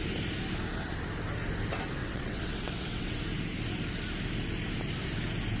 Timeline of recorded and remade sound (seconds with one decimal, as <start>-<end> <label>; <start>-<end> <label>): 0.0-2.0 recorded; 2.0-3.2 remade; 3.2-5.6 recorded